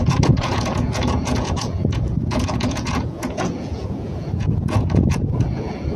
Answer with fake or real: fake